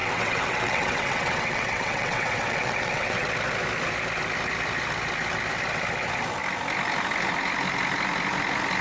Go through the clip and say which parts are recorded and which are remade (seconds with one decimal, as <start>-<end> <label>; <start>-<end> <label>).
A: 0.0-3.3 remade; 3.3-8.8 recorded